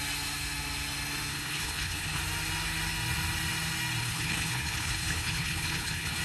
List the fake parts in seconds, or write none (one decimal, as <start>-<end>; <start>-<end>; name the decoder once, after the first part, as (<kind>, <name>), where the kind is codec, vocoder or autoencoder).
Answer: 1.3-2.2 (codec, HILCodec); 4.0-6.2